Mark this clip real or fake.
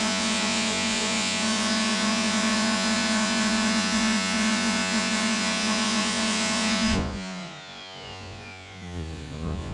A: fake